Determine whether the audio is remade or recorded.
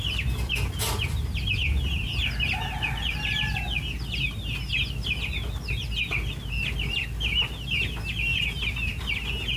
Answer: recorded